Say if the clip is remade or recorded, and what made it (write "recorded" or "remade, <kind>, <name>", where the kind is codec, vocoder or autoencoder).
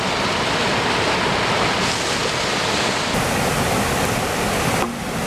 recorded